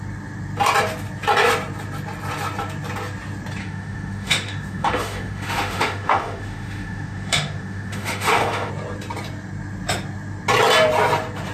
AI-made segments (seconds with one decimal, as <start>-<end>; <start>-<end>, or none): 3.6-8.7